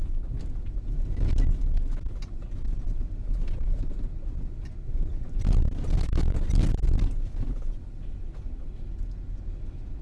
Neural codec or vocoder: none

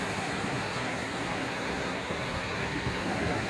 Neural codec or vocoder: codec, SNAC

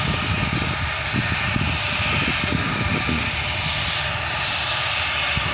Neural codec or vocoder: none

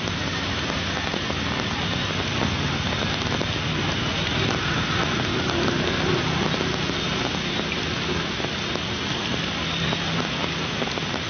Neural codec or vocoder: none